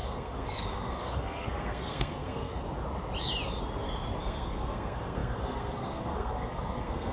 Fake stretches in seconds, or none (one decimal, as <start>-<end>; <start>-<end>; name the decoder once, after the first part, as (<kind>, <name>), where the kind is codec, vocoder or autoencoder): 0.0-2.5 (codec, SNAC); 4.2-7.1